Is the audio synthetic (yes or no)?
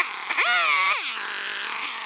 no